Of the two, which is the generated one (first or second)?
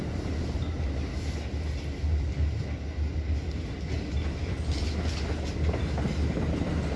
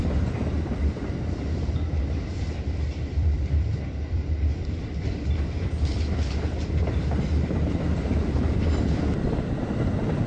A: second